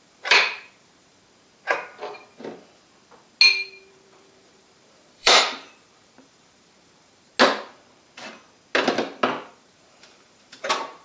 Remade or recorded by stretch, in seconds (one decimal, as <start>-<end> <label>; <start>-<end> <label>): 0.0-1.2 remade; 1.2-3.9 recorded; 3.9-7.3 remade; 7.3-9.5 recorded; 9.5-11.0 remade